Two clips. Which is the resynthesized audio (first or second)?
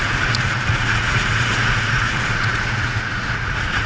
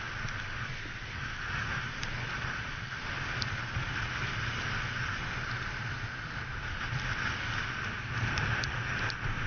first